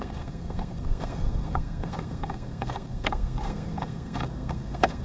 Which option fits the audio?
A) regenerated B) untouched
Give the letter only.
A